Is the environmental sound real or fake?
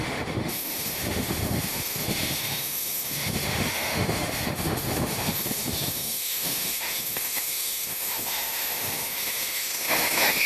fake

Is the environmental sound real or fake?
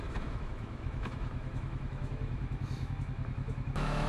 fake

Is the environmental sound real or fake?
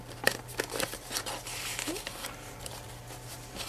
real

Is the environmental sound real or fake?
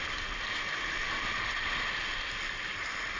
real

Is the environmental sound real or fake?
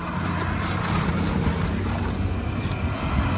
real